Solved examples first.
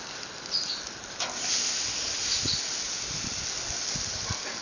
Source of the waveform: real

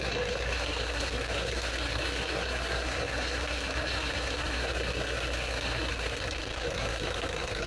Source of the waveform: fake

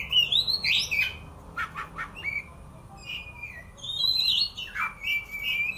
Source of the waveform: real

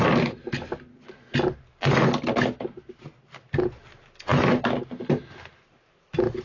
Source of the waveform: real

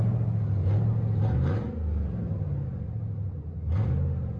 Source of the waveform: real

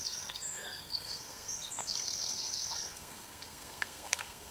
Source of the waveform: fake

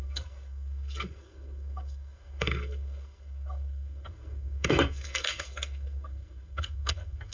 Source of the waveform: fake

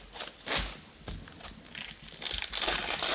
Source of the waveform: real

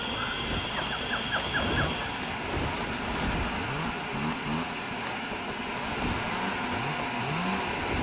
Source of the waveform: real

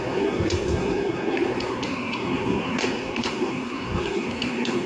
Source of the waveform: fake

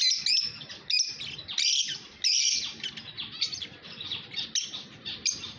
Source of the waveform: real